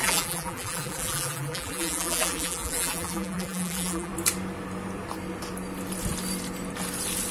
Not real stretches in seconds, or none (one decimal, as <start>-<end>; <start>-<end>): 0.0-4.1